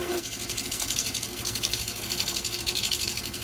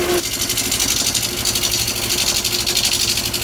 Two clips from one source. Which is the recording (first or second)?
second